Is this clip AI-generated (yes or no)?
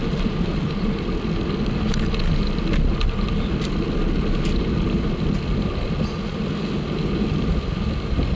no